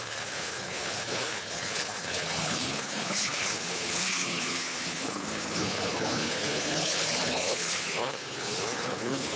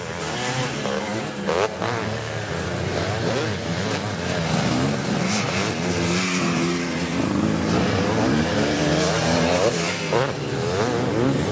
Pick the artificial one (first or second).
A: first